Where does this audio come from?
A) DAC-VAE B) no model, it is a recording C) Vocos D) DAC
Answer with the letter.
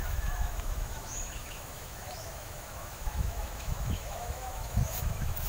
A